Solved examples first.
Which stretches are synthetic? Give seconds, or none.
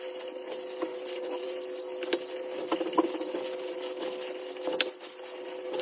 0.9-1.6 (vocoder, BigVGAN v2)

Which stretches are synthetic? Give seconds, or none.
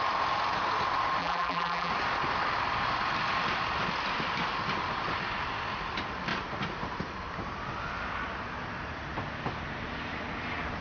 1.2-1.9 (vocoder, BigVGAN v2)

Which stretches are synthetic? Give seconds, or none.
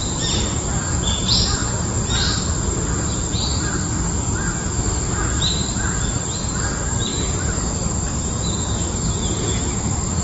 0.0-1.6 (vocoder, BigVGAN v2); 2.4-10.2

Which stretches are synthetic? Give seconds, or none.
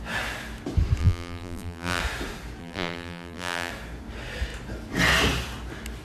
1.0-2.0 (vocoder, BigVGAN v2); 2.6-3.7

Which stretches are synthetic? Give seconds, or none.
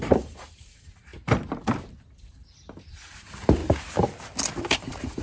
0.0-1.1 (vocoder, BigVGAN v2); 3.2-3.6; 4.6-5.2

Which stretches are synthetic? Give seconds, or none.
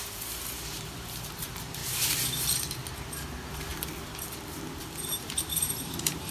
0.0-1.8 (vocoder, BigVGAN v2); 2.9-3.7; 5.0-6.3